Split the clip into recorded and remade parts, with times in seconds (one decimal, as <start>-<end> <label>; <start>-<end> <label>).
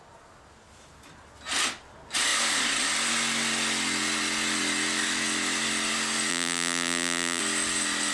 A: 0.0-6.3 recorded; 6.3-7.4 remade; 7.4-8.1 recorded